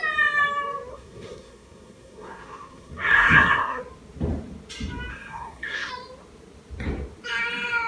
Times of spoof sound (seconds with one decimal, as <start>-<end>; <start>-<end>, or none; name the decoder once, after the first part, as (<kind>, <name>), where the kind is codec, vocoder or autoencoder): 0.9-3.8 (codec, SNAC); 5.1-5.9